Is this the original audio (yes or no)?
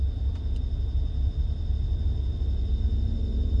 yes